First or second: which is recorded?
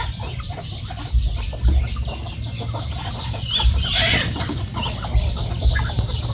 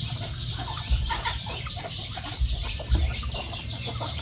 first